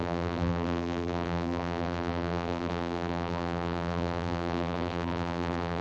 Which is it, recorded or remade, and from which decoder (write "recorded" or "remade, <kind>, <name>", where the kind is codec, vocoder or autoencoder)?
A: remade, vocoder, BigVGAN v2